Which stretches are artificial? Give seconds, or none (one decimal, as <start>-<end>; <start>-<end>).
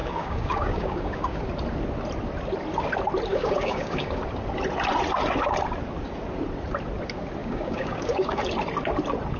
0.0-1.4; 3.3-4.2; 7.4-8.4